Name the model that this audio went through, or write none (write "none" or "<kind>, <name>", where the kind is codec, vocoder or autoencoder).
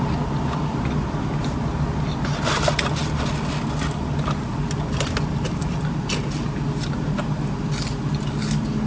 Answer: none